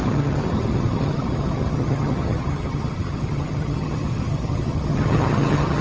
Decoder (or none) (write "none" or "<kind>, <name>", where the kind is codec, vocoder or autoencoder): vocoder, HiFi-GAN